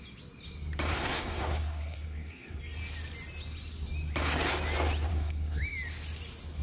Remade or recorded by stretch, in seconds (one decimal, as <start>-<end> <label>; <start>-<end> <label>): 0.0-0.9 recorded; 0.9-2.6 remade; 2.6-5.1 recorded; 5.1-5.6 remade; 5.6-6.6 recorded

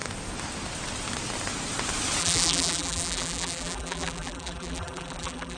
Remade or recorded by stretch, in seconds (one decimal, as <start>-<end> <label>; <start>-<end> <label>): 0.0-2.2 recorded; 2.2-5.6 remade

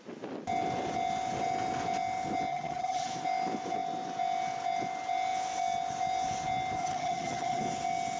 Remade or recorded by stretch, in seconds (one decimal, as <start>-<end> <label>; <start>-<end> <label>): 0.0-2.5 recorded; 2.5-3.1 remade; 3.1-6.8 recorded; 6.8-7.6 remade; 7.6-8.2 recorded

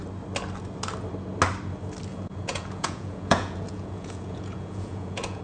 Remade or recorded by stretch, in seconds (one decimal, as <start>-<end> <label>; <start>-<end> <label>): 0.0-2.1 recorded; 2.1-5.4 remade

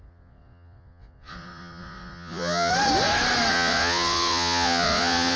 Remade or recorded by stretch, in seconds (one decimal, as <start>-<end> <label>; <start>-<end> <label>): 0.0-2.7 remade; 2.7-3.5 recorded; 3.5-5.4 remade

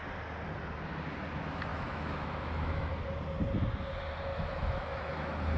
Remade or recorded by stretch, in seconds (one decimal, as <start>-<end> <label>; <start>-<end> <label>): 0.0-1.7 recorded; 1.7-2.9 remade; 2.9-4.3 recorded; 4.3-5.1 remade; 5.1-5.6 recorded